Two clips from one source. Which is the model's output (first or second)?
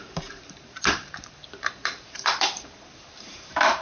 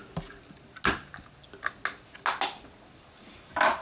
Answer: first